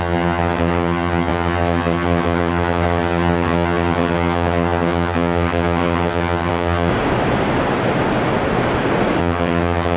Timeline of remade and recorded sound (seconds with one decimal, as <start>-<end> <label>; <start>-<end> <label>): 0.0-6.9 remade; 6.9-9.2 recorded; 9.2-10.0 remade